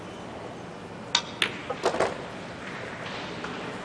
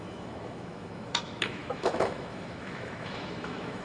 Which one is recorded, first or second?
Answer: first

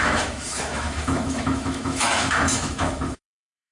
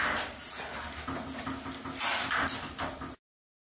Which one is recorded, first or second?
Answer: second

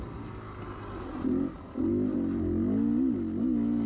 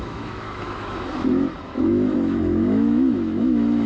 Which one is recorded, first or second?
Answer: first